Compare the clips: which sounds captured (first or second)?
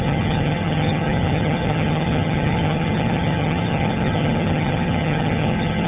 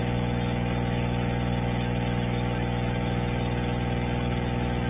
second